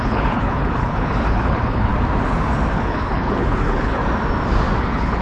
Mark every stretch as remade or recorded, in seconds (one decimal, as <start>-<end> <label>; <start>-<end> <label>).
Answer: 0.0-1.9 remade; 1.9-2.7 recorded; 2.7-4.0 remade; 4.0-4.8 recorded; 4.8-5.2 remade